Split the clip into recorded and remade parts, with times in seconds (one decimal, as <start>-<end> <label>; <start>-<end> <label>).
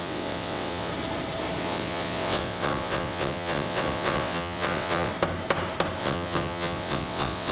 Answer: 0.0-0.9 remade; 0.9-1.6 recorded; 1.6-5.1 remade; 5.1-6.0 recorded; 6.0-7.5 remade